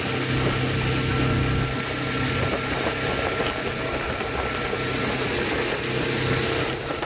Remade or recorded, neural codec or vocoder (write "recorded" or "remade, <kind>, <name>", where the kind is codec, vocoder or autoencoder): recorded